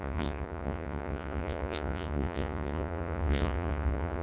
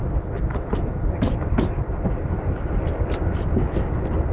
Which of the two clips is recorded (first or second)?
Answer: second